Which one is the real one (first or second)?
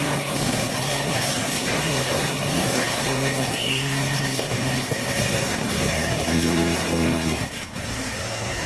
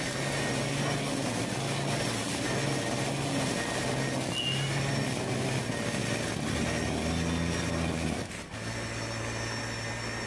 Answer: second